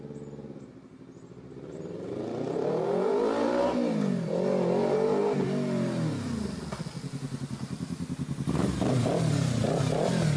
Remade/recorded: recorded